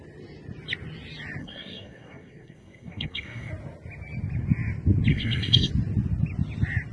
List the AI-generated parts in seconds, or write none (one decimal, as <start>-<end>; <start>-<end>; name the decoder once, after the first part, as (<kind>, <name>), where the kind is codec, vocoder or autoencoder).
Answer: 1.4-3.5 (codec, SNAC); 5.1-5.7